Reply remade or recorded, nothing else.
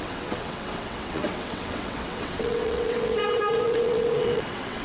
remade